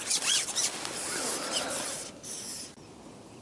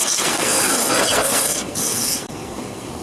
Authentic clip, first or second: first